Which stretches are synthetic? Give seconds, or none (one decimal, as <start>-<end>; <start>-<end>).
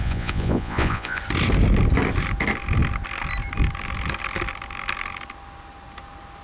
0.0-1.2